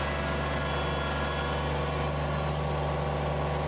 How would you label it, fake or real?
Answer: real